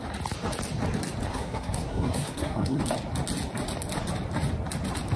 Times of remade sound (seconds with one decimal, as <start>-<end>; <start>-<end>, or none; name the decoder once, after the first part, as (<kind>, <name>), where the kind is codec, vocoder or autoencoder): 1.3-2.8 (codec, SNAC)